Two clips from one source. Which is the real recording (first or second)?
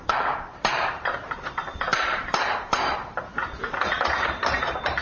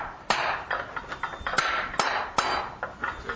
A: second